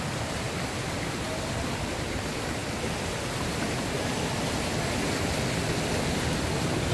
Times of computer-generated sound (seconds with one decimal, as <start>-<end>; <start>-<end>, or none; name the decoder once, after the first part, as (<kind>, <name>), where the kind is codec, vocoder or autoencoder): none